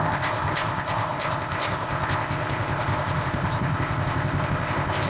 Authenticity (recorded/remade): remade